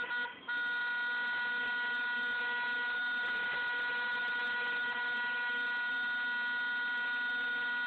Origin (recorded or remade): recorded